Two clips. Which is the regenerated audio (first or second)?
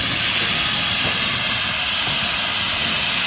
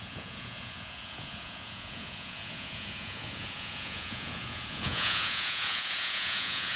second